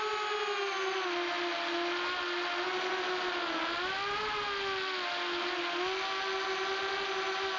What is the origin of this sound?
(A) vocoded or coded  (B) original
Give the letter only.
B